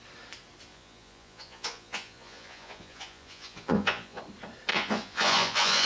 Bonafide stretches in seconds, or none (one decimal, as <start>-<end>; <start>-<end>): 0.0-0.7; 4.2-4.7

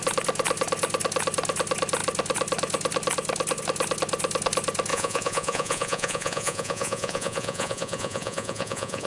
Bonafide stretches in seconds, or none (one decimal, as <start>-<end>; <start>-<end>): 0.0-4.9

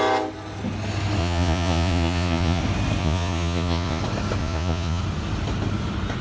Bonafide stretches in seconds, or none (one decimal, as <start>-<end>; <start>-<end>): 0.0-1.2; 2.6-3.0; 4.0-4.4; 5.0-6.2

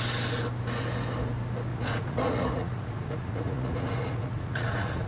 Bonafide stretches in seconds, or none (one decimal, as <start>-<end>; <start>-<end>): 0.0-1.7